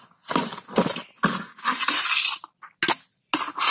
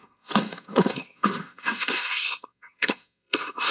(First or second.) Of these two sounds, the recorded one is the first